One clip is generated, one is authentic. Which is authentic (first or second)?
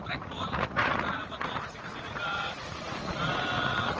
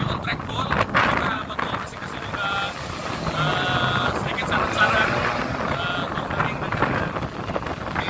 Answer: second